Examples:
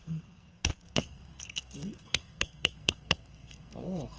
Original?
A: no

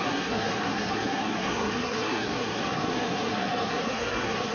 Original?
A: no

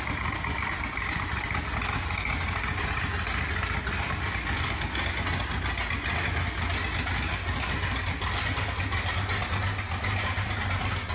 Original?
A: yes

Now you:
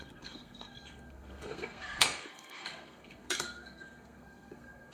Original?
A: no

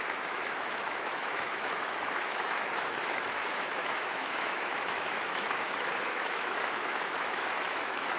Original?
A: no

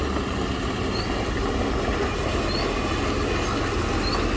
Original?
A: yes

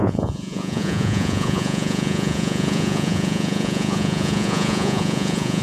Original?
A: no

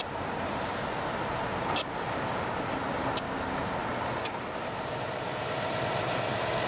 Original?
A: yes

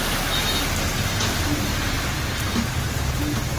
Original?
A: yes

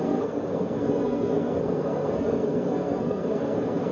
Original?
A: no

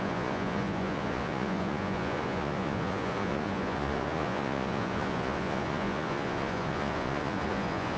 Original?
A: no